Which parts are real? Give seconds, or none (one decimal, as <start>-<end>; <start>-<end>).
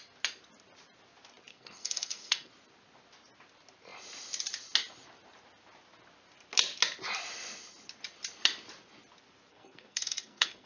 0.0-1.5; 2.5-9.5